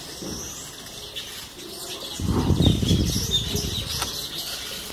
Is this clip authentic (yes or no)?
yes